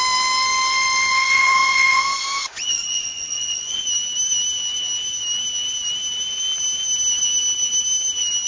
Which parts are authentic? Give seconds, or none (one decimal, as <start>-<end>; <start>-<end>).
0.0-1.1; 3.8-8.5